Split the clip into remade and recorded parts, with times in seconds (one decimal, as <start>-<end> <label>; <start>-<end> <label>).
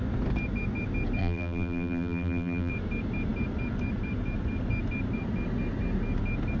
0.0-1.2 recorded; 1.2-2.7 remade; 2.7-6.6 recorded